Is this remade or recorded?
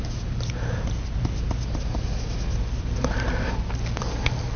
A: recorded